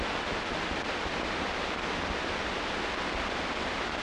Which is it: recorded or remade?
recorded